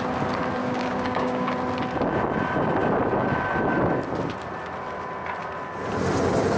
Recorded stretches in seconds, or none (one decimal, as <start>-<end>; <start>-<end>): 0.0-0.6; 1.5-6.6